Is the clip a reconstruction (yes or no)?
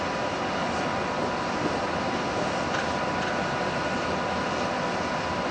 no